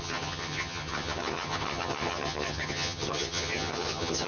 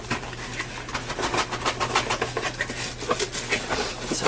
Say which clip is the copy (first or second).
first